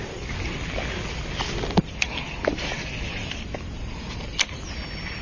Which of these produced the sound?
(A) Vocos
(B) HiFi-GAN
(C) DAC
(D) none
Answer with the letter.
D